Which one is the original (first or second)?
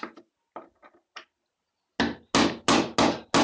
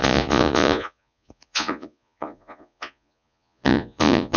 first